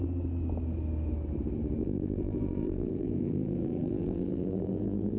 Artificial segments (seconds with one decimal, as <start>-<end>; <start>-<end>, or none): 1.8-5.2